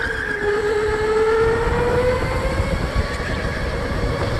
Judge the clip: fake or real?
real